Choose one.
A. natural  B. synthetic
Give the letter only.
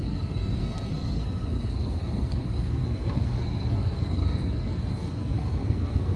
B